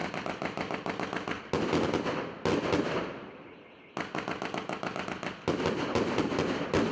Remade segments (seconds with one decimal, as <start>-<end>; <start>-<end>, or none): none